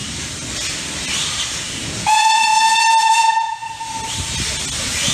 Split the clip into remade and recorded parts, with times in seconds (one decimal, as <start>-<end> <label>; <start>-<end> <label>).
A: 0.0-2.0 recorded; 2.0-3.6 remade; 3.6-5.1 recorded